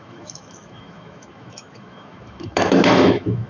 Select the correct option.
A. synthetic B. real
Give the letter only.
A